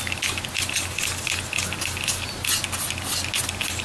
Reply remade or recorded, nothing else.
recorded